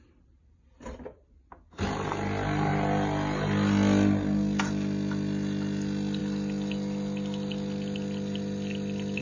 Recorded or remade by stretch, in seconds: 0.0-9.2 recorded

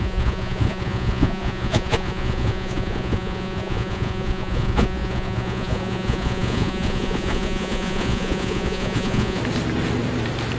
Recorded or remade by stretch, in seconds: 0.0-9.4 remade; 9.4-10.6 recorded

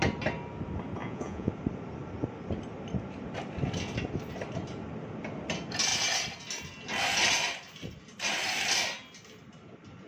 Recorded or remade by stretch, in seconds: 0.0-1.0 recorded; 1.0-1.5 remade; 1.5-10.1 recorded